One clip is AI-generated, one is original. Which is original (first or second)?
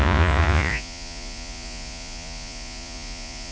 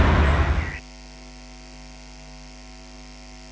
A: second